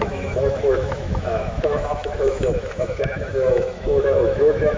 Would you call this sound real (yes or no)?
no